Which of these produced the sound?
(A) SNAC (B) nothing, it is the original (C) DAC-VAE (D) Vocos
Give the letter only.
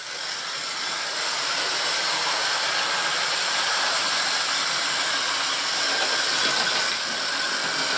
B